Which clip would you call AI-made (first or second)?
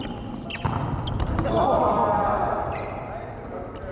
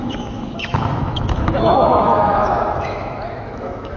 second